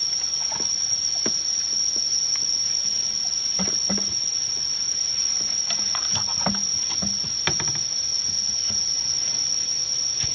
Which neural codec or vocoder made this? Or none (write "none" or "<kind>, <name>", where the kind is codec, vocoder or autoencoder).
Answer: none